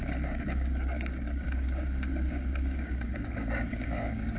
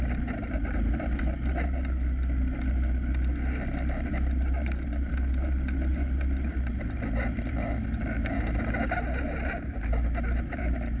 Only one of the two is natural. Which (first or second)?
second